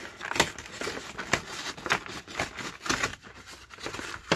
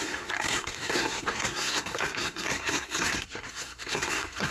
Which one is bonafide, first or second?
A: first